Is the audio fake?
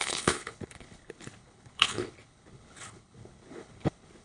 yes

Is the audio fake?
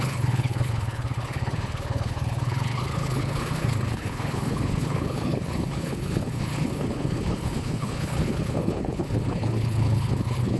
yes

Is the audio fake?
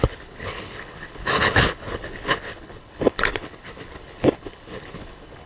yes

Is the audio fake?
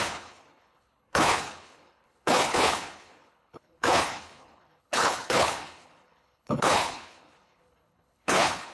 yes